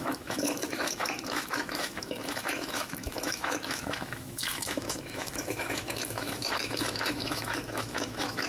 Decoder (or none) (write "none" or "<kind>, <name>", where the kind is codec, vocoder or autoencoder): autoencoder, DAC-VAE